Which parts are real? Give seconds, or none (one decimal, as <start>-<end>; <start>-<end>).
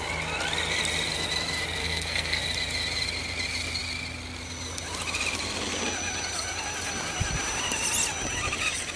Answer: 0.0-1.8; 2.4-9.0